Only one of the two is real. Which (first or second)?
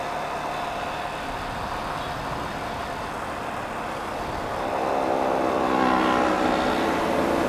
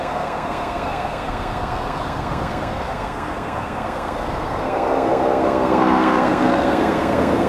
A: first